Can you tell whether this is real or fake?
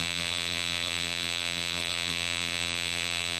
fake